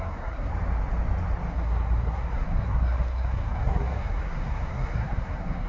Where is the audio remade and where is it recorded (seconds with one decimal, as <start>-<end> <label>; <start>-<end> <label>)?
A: 0.0-0.5 remade; 0.5-1.5 recorded; 1.5-5.7 remade